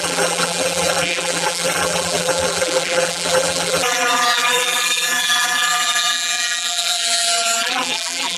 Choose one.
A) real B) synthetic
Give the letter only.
B